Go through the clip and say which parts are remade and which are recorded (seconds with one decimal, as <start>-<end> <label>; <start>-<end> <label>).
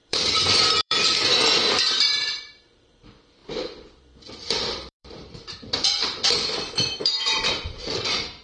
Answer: 0.0-3.4 remade; 3.4-4.3 recorded; 4.3-8.4 remade